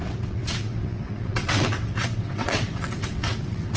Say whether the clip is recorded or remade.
remade